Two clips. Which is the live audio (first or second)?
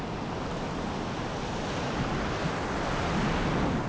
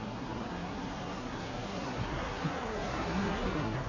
first